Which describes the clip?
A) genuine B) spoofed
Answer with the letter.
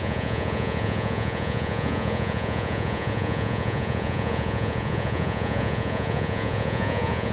B